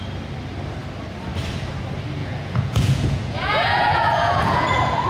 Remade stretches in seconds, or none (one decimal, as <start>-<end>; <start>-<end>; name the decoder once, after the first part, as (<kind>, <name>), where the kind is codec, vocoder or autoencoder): 2.2-5.1 (vocoder, Vocos)

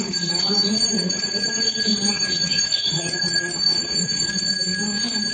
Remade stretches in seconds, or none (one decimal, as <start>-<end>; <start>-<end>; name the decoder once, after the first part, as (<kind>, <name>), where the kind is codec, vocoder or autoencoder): 0.0-4.5 (vocoder, Vocos)

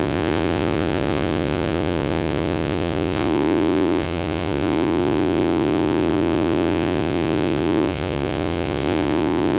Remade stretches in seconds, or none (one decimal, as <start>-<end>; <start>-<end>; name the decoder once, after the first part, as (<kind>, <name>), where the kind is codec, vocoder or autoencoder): 0.0-9.6 (vocoder, Vocos)